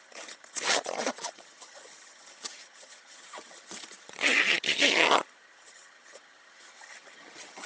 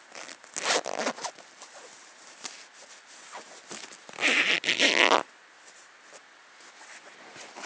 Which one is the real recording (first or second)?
second